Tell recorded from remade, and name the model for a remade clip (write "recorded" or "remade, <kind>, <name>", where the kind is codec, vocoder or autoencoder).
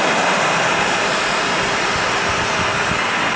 recorded